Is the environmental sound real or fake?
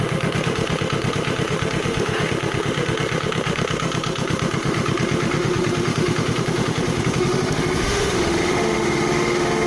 fake